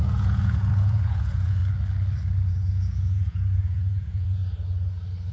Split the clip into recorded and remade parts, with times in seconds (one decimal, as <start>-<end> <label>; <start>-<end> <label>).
0.0-1.6 remade; 1.6-2.5 recorded; 2.5-4.4 remade; 4.4-5.3 recorded